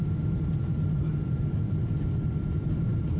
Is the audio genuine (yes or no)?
yes